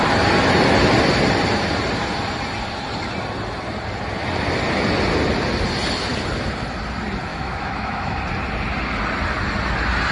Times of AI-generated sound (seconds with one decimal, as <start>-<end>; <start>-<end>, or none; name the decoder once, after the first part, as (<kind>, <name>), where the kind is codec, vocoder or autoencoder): 7.3-8.2 (autoencoder, DAC-VAE)